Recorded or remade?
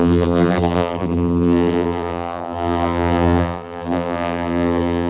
remade